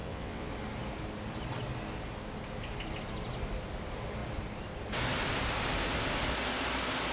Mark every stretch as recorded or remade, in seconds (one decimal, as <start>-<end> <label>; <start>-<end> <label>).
0.0-0.5 remade; 0.5-7.1 recorded